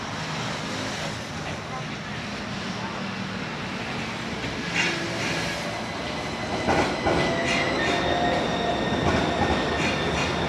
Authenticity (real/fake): real